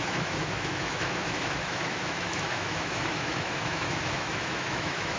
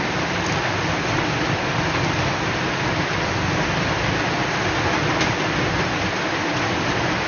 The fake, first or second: first